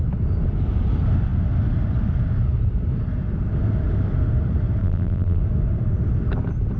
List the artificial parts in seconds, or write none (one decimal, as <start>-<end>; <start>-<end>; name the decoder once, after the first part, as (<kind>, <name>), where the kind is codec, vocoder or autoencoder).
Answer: 4.8-5.4 (vocoder, BigVGAN v2)